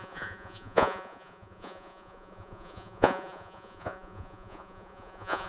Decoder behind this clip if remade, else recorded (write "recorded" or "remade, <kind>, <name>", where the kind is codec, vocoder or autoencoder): remade, vocoder, Vocos